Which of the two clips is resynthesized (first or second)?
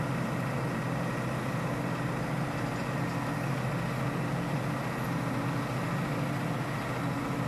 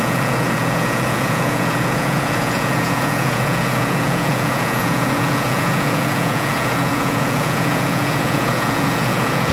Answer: second